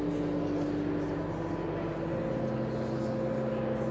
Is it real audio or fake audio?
real